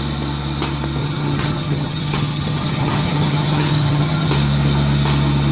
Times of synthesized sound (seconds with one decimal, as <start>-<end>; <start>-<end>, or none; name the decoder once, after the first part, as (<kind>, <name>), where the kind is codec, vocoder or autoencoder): 1.0-4.3 (vocoder, HiFi-GAN)